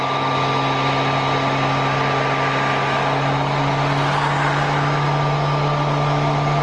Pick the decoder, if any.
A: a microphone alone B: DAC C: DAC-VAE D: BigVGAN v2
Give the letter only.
A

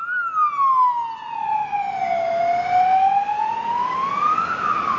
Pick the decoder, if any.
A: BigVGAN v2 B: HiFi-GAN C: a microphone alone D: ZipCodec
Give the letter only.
C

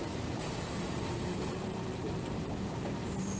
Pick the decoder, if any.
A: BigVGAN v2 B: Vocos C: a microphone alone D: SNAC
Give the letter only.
A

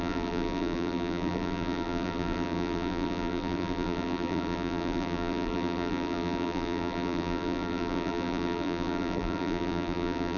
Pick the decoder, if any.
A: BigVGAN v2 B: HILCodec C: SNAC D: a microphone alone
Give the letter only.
A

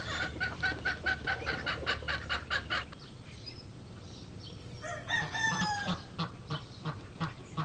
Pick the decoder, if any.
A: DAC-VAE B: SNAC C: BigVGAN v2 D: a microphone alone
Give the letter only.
C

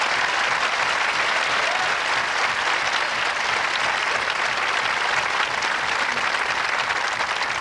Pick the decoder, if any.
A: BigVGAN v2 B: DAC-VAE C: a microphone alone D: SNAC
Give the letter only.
C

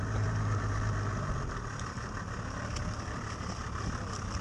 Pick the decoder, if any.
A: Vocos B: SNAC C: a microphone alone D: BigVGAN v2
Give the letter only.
C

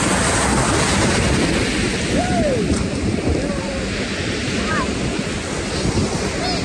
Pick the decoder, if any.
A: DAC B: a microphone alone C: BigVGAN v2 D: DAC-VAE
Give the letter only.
B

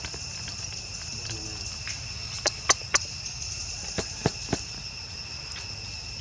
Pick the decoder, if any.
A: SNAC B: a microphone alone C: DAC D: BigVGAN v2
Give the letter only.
B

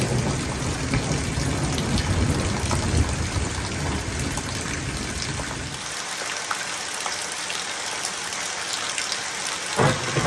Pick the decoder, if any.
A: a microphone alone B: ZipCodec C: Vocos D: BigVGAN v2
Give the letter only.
A